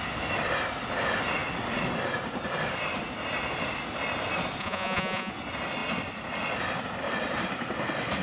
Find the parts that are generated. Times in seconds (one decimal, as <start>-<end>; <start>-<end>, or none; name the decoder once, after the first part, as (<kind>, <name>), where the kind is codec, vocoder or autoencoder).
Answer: 4.6-5.3 (vocoder, Vocos)